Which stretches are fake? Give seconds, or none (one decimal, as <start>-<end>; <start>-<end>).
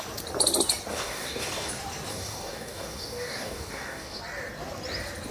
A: 0.9-1.7; 2.1-4.2